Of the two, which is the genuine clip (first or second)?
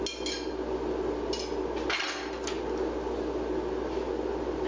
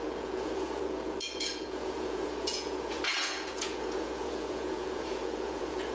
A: first